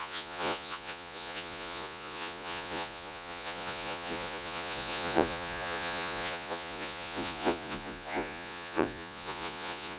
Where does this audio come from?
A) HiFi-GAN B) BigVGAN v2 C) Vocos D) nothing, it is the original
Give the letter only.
C